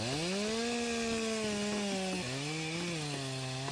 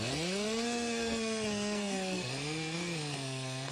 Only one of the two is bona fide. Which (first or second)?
first